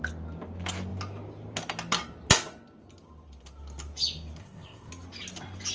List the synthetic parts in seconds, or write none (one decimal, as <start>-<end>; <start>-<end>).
4.4-4.9